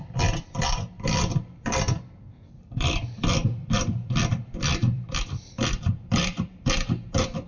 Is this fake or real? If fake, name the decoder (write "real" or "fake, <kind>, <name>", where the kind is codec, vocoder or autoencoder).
fake, vocoder, BigVGAN v2